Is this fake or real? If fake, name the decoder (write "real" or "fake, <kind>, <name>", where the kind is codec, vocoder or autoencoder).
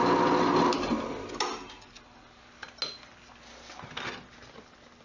real